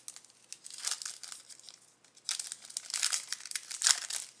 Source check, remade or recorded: recorded